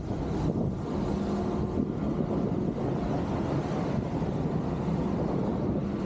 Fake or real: real